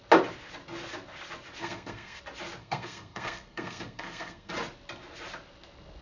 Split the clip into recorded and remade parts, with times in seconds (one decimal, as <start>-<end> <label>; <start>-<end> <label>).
0.0-1.6 recorded; 1.6-2.2 remade; 2.2-2.6 recorded; 2.6-4.5 remade; 4.5-6.0 recorded